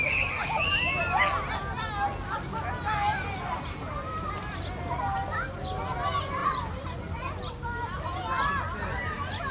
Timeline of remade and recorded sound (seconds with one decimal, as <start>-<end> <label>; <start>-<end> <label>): 0.0-6.4 recorded; 6.4-7.3 remade; 7.3-9.5 recorded

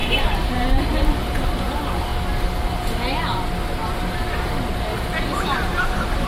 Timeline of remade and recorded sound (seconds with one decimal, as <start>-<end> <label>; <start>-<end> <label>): 0.0-2.1 remade; 2.1-3.9 recorded; 3.9-6.3 remade

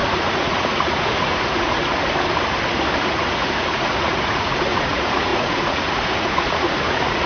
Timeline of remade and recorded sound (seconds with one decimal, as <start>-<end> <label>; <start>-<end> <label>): 0.0-2.0 remade; 2.0-3.0 recorded; 3.0-7.3 remade

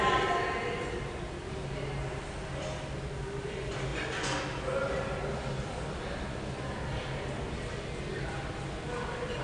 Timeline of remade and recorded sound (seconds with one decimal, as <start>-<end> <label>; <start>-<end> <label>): 0.0-9.4 recorded